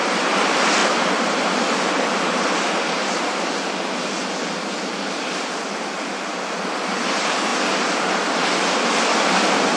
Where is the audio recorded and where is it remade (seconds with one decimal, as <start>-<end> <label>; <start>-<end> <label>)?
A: 0.0-0.8 remade; 0.8-5.6 recorded; 5.6-9.8 remade